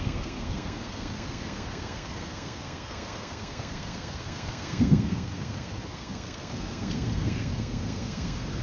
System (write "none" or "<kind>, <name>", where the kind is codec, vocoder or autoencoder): codec, SNAC